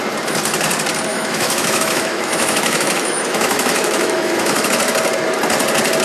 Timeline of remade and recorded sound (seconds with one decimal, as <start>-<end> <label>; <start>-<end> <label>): 0.0-1.1 recorded; 1.1-4.7 remade; 4.7-6.0 recorded